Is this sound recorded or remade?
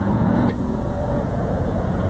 remade